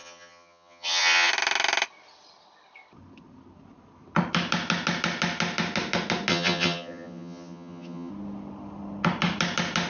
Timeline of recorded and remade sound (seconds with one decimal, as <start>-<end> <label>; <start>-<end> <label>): 0.0-1.3 remade; 1.3-6.3 recorded; 6.3-8.1 remade; 8.1-9.9 recorded